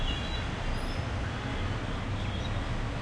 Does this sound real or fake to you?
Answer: real